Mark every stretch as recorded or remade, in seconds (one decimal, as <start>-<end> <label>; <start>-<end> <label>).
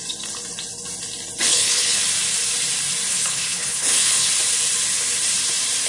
0.0-1.5 recorded; 1.5-2.0 remade; 2.0-3.1 recorded; 3.1-4.3 remade; 4.3-5.9 recorded